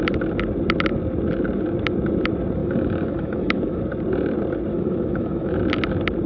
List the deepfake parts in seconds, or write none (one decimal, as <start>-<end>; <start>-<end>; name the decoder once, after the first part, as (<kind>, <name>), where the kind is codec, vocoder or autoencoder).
2.6-3.8 (autoencoder, DAC-VAE); 4.7-5.6